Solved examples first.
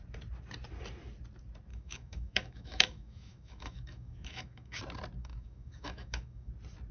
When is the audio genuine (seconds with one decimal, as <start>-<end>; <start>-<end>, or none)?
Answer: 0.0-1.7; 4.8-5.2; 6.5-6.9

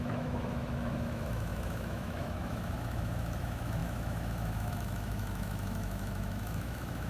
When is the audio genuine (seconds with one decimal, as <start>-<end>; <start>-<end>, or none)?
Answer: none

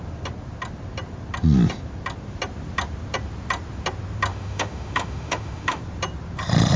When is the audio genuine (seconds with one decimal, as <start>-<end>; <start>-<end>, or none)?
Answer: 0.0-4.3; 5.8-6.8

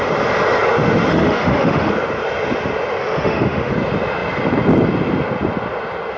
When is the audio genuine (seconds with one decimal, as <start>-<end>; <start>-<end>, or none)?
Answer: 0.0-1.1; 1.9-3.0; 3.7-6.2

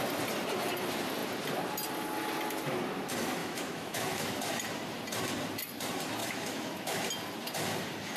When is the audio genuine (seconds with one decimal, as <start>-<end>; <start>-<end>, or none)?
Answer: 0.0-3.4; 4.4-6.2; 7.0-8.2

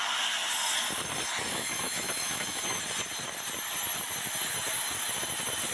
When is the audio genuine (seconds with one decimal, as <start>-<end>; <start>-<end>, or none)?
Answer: 0.0-1.5; 2.8-5.7

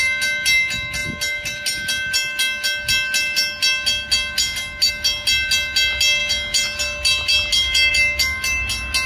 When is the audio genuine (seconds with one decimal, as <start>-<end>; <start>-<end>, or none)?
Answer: 0.0-9.1